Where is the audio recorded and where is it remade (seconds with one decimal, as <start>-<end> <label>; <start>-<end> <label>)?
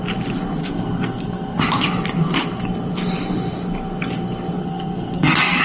0.0-0.6 recorded; 0.6-1.6 remade; 1.6-4.6 recorded; 4.6-5.6 remade